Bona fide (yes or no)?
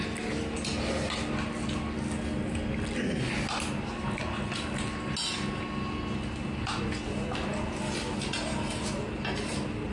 yes